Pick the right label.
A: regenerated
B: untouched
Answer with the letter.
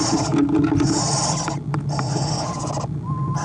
B